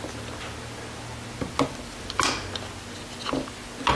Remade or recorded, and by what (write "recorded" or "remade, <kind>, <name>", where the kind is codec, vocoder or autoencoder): recorded